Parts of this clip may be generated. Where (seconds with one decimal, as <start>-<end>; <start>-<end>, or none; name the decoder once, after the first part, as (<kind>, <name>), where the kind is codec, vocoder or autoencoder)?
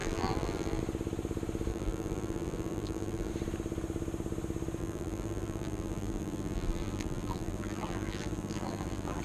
0.0-0.8 (vocoder, BigVGAN v2); 1.7-3.3; 4.8-9.2